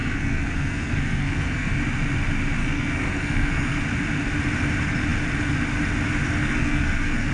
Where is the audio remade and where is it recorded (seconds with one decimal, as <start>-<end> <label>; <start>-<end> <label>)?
0.0-1.8 remade; 1.8-2.6 recorded; 2.6-3.8 remade; 3.8-6.4 recorded; 6.4-7.3 remade